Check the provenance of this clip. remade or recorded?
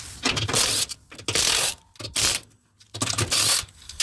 recorded